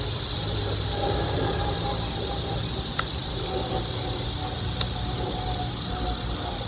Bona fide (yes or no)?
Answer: yes